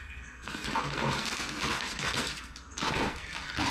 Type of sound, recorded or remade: remade